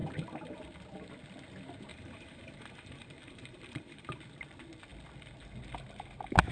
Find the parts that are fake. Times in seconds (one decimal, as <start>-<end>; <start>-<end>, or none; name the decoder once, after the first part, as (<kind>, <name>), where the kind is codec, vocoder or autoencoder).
0.0-0.6 (vocoder, BigVGAN v2); 1.9-4.2